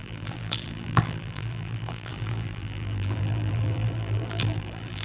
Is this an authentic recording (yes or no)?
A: no